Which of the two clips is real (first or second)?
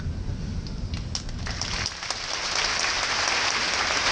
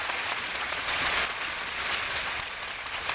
first